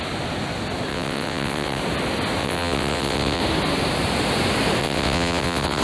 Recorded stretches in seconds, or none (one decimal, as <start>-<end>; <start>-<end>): 0.0-0.9; 1.8-2.4; 3.4-4.8